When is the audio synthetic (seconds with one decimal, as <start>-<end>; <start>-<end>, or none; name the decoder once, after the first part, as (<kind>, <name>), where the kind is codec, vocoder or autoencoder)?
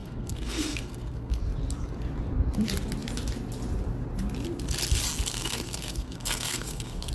0.0-1.4 (codec, SNAC); 5.3-7.1